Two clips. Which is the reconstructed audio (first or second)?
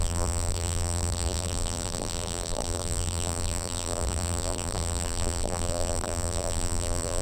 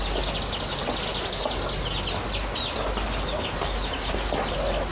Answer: first